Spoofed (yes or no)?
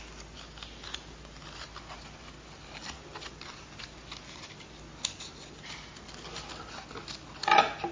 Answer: no